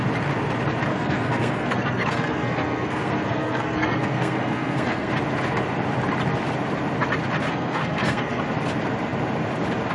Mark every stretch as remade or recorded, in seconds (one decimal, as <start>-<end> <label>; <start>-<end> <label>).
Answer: 0.0-0.9 recorded; 0.9-5.1 remade; 5.1-7.5 recorded; 7.5-8.4 remade; 8.4-9.9 recorded

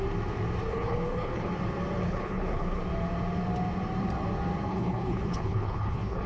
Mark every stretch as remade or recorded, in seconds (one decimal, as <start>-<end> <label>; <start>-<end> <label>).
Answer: 0.0-0.7 recorded; 0.7-1.5 remade; 1.5-2.0 recorded; 2.0-2.8 remade; 2.8-4.7 recorded; 4.7-6.3 remade

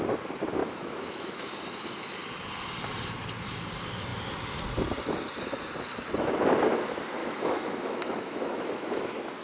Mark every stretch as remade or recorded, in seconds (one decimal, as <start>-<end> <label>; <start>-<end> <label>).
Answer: 0.0-0.6 recorded; 0.6-1.4 remade; 1.4-7.2 recorded; 7.2-9.0 remade; 9.0-9.4 recorded

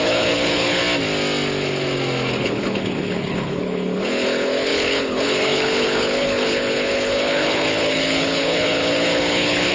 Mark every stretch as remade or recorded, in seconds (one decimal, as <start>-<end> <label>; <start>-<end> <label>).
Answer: 0.0-0.8 remade; 0.8-2.4 recorded; 2.4-9.7 remade